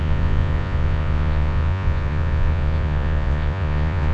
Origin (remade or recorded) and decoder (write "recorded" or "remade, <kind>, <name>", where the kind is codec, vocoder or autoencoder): remade, vocoder, Vocos